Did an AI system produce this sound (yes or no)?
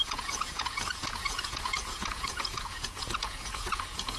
yes